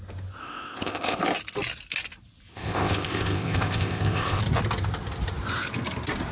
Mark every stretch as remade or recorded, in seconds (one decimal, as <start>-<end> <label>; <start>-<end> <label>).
0.0-0.4 recorded; 0.4-1.2 remade; 1.2-2.5 recorded; 2.5-4.4 remade; 4.4-6.3 recorded